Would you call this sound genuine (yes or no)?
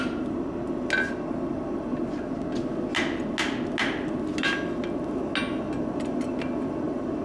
yes